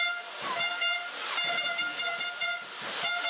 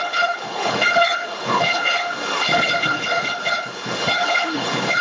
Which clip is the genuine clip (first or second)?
first